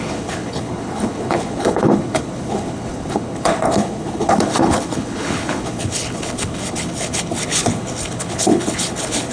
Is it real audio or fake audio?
fake